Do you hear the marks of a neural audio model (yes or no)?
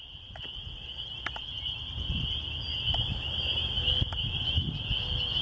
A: no